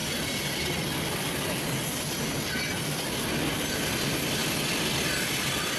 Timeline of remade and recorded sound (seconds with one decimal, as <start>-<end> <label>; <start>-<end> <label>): 0.0-3.5 recorded; 3.5-5.8 remade